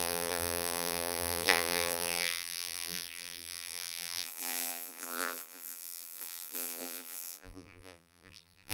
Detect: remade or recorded remade